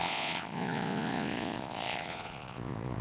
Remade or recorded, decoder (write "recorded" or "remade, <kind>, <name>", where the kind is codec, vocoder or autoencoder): remade, vocoder, Vocos